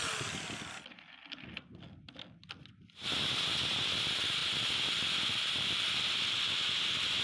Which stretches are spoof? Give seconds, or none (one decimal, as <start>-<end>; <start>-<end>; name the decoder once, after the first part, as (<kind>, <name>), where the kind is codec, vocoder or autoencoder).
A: none